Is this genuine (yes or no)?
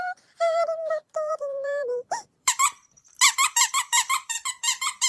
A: no